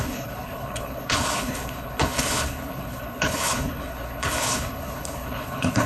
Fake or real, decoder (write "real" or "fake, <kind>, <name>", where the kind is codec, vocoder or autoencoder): fake, codec, HILCodec